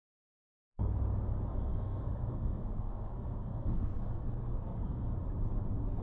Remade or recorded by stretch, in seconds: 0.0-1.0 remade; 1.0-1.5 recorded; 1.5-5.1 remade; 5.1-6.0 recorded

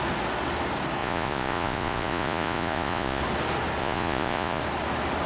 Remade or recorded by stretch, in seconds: 0.0-1.0 recorded; 1.0-3.2 remade; 3.2-3.8 recorded; 3.8-4.6 remade; 4.6-5.3 recorded

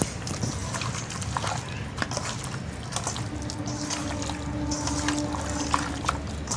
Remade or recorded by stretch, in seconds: 0.0-6.6 recorded

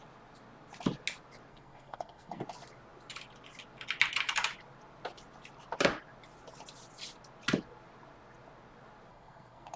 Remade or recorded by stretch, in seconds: 0.0-1.5 recorded; 1.5-2.4 remade; 2.4-9.1 recorded; 9.1-9.8 remade

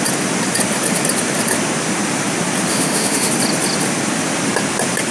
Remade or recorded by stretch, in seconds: 0.0-2.7 recorded; 2.7-3.3 remade; 3.3-5.1 recorded

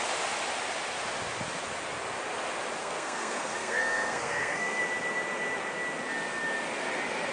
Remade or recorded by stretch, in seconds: 0.0-2.8 recorded; 2.8-4.8 remade; 4.8-7.3 recorded

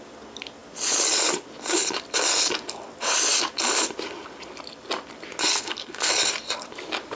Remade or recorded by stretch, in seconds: 0.0-5.5 recorded; 5.5-6.1 remade; 6.1-7.2 recorded